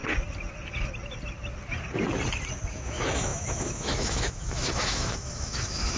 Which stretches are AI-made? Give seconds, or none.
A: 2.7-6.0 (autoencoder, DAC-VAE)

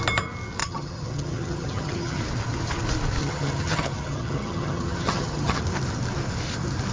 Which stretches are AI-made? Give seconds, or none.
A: 0.6-2.2 (vocoder, HiFi-GAN); 3.2-5.6

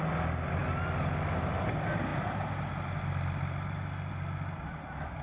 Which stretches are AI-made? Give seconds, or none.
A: none

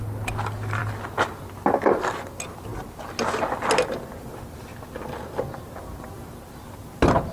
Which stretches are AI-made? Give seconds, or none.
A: none

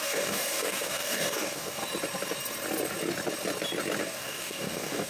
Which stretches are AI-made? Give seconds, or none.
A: 0.0-1.8 (codec, DAC); 4.0-5.1

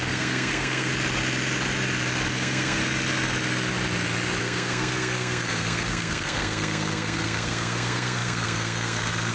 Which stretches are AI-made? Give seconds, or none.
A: 0.0-0.9 (codec, SNAC); 2.3-2.8; 4.4-9.3